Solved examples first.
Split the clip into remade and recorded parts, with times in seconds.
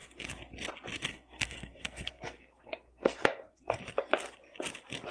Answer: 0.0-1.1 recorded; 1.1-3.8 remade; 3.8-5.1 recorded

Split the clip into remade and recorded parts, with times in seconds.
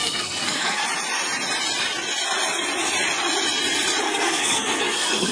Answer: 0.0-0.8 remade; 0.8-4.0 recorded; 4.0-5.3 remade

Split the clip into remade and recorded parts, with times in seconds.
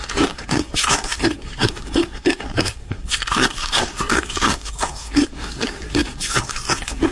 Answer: 0.0-7.1 remade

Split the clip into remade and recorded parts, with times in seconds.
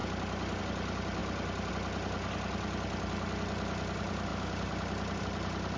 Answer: 0.0-5.8 recorded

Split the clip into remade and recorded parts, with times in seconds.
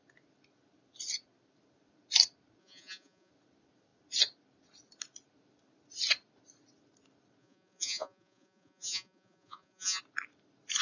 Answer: 0.0-2.6 recorded; 2.6-3.3 remade; 3.3-7.4 recorded; 7.4-10.0 remade; 10.0-10.8 recorded